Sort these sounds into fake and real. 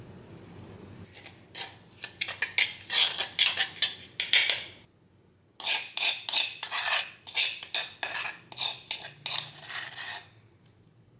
real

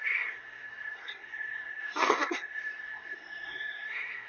fake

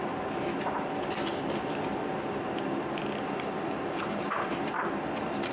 fake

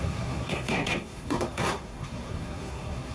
fake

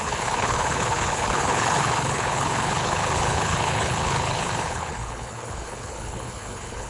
fake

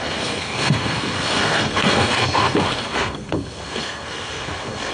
fake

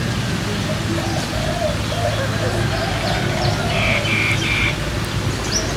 real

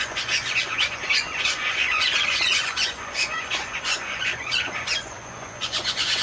fake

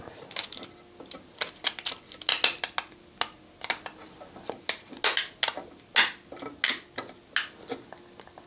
real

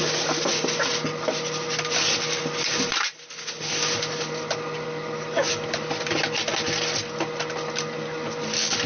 real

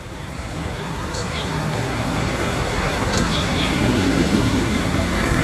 fake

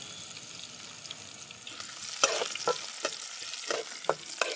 real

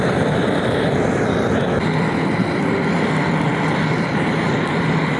real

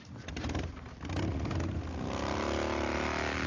real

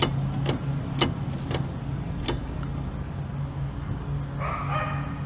real